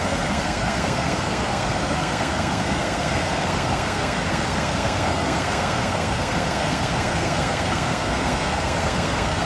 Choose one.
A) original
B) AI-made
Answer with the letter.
B